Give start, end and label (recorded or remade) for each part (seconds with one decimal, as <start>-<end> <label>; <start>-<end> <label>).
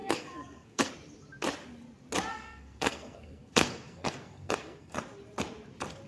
0.0-0.9 remade; 0.9-2.3 recorded; 2.3-5.0 remade; 5.0-6.1 recorded